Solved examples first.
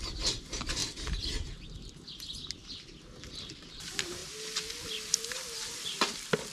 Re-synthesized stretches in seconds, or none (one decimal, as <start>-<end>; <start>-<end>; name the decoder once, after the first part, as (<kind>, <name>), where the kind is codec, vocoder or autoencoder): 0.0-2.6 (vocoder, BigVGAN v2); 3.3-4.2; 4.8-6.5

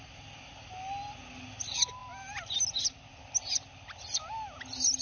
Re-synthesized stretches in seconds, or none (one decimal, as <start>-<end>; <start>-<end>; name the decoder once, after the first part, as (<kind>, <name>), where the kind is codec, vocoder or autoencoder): none

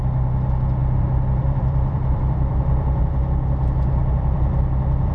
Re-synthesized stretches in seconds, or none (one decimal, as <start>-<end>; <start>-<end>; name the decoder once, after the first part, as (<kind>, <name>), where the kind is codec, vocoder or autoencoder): 0.8-3.0 (vocoder, BigVGAN v2); 4.0-5.1

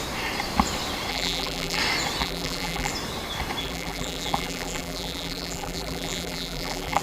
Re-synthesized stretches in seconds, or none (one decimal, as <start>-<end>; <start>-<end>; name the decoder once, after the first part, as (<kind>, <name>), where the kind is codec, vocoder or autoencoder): 1.1-1.8 (vocoder, BigVGAN v2); 2.2-2.9; 3.6-7.0

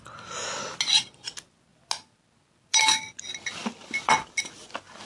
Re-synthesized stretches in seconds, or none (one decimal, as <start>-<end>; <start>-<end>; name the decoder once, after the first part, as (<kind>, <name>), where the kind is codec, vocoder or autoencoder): none